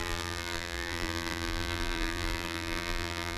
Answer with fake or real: fake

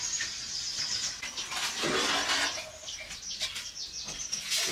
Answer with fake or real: real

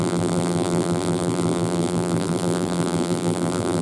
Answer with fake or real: fake